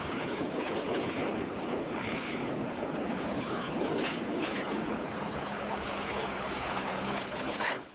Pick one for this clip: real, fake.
fake